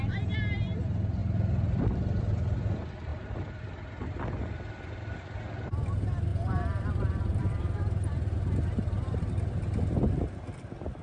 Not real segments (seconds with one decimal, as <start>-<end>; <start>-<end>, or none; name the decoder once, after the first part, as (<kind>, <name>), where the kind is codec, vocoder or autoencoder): 6.3-7.8 (vocoder, BigVGAN v2)